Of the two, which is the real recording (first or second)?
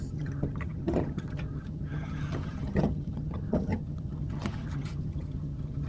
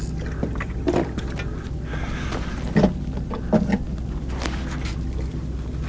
second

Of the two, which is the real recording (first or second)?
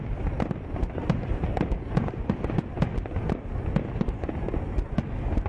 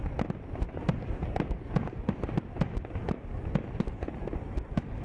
first